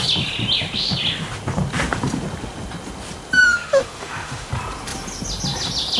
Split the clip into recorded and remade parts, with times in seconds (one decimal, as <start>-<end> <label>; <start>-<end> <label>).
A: 0.0-3.4 recorded; 3.4-4.5 remade; 4.5-6.0 recorded